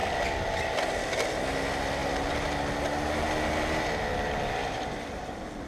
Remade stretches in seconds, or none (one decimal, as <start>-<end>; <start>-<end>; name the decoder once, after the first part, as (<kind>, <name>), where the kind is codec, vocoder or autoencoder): none

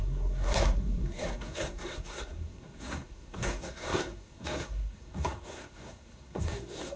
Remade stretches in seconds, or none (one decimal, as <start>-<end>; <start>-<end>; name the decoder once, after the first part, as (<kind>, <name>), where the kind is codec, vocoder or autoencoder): 0.0-7.0 (codec, SNAC)

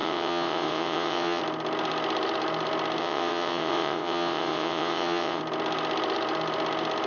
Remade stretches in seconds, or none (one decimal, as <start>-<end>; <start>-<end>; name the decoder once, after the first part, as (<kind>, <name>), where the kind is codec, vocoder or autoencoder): 0.0-1.4 (vocoder, WaveNeXt); 3.0-5.4

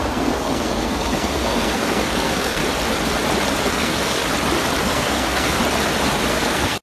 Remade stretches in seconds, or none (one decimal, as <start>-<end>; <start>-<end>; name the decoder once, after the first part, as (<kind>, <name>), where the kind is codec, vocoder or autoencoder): 0.0-2.6 (codec, SNAC); 3.6-4.2; 4.8-5.6; 6.3-6.8

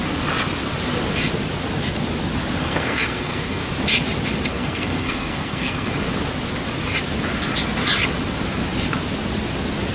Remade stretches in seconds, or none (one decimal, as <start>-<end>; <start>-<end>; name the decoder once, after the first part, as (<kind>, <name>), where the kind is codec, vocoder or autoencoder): 2.6-3.6 (codec, SNAC); 4.5-5.9